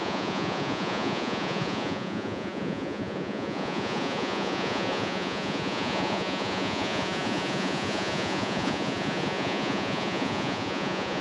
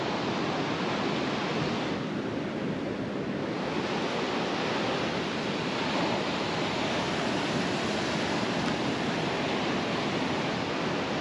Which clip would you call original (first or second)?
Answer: second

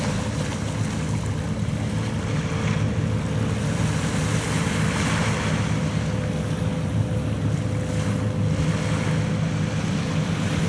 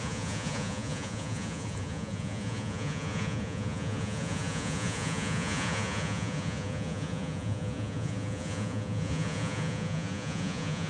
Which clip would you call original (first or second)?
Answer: first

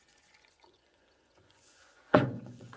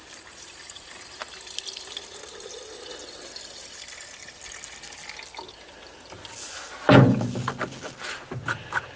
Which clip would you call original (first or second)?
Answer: second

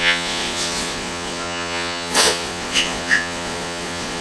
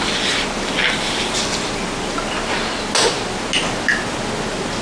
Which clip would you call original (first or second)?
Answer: second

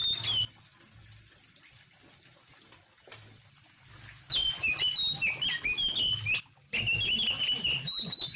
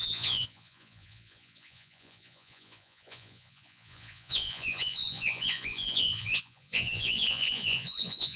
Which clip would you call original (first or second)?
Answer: first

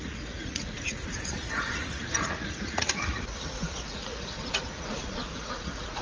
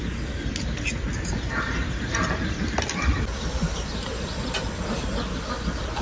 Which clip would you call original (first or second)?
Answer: second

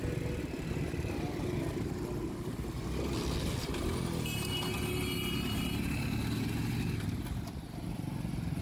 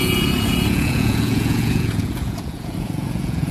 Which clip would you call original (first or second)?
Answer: first